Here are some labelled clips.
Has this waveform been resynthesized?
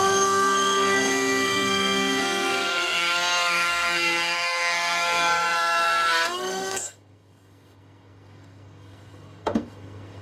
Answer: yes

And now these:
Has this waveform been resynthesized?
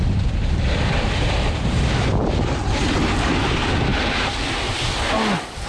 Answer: no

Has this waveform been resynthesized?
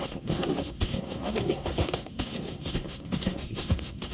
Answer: yes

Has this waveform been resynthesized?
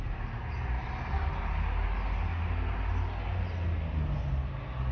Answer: no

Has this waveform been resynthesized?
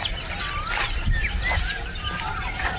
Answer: no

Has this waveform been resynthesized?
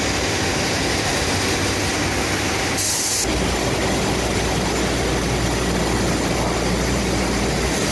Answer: no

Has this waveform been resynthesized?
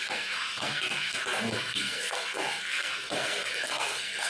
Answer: yes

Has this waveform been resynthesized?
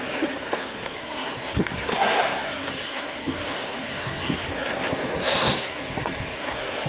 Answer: yes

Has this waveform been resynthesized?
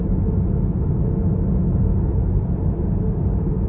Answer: no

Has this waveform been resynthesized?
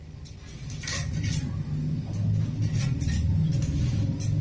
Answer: no